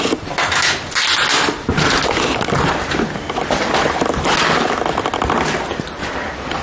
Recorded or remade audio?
recorded